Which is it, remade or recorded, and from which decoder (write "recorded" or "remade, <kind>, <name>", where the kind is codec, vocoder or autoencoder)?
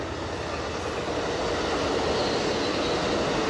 recorded